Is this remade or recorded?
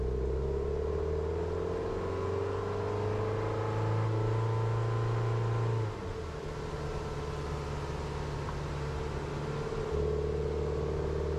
recorded